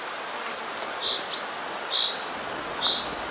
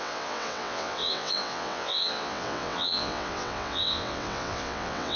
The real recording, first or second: first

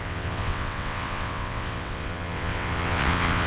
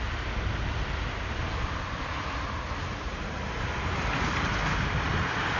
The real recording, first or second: second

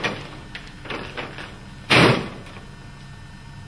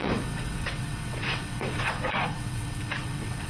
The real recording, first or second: first